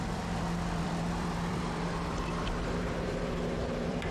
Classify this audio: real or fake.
fake